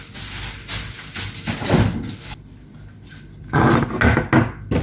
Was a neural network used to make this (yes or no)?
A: no